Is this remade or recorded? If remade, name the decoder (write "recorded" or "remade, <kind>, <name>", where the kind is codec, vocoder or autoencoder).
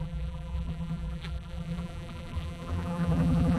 remade, vocoder, BigVGAN v2